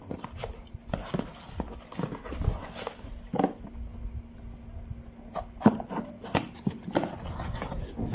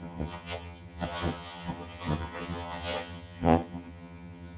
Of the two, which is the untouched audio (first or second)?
first